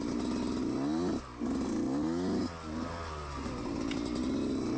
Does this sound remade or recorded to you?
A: recorded